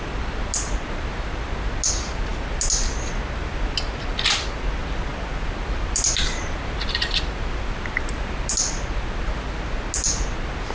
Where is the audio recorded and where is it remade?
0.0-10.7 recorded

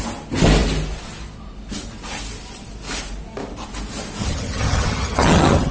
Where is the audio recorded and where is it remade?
0.0-4.2 recorded; 4.2-5.7 remade

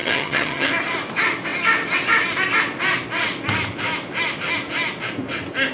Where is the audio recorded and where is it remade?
0.0-0.7 remade; 0.7-5.7 recorded

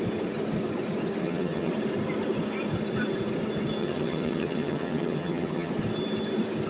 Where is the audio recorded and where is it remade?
0.0-1.2 recorded; 1.2-1.7 remade; 1.7-3.8 recorded; 3.8-5.7 remade; 5.7-6.7 recorded

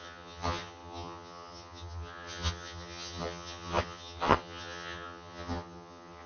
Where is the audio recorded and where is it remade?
0.0-6.3 remade

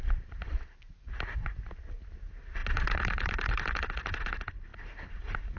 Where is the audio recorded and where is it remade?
0.0-5.6 recorded

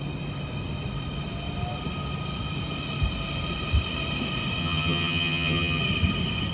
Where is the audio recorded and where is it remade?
0.0-4.6 recorded; 4.6-5.8 remade; 5.8-6.5 recorded